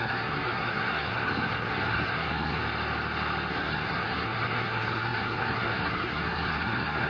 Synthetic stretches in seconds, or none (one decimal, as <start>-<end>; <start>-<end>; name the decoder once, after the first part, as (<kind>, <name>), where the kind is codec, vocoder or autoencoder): 0.0-2.6 (codec, SNAC); 3.5-7.1